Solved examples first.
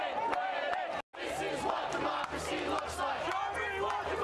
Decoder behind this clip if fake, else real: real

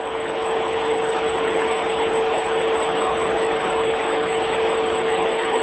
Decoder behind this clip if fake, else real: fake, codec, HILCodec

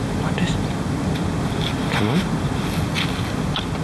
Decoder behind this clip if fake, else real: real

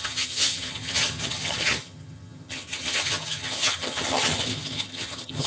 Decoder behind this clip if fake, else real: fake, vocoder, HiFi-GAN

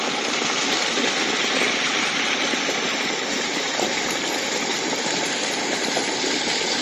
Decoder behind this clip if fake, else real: real